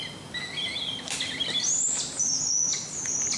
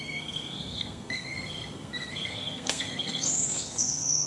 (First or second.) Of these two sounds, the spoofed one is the second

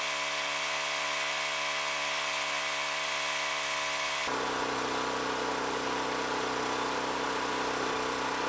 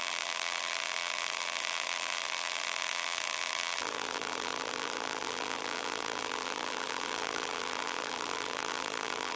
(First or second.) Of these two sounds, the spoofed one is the second